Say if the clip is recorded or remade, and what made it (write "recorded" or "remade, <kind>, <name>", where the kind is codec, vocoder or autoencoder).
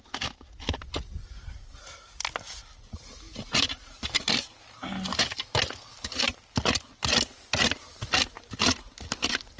recorded